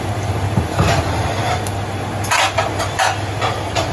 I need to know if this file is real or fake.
real